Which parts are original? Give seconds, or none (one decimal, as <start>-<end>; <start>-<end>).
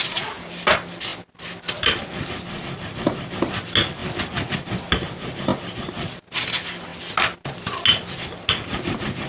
0.0-9.3